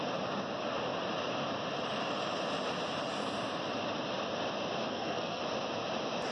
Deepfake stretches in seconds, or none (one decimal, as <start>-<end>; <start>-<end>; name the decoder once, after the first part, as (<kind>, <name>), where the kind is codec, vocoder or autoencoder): 4.8-5.4 (codec, SNAC)